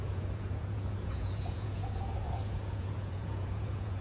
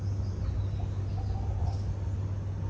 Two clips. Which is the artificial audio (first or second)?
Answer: first